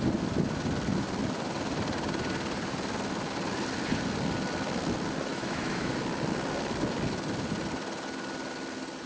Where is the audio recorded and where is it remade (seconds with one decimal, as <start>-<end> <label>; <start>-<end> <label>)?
0.0-5.3 recorded; 5.3-5.9 remade; 5.9-9.1 recorded